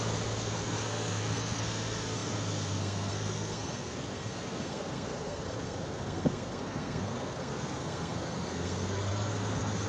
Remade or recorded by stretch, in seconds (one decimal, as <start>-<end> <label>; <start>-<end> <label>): 0.0-9.9 remade